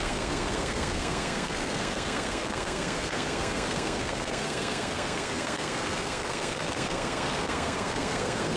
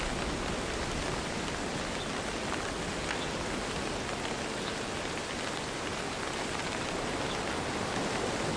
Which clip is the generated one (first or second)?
first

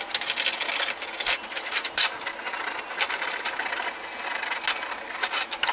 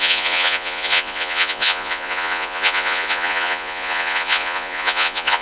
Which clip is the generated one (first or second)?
second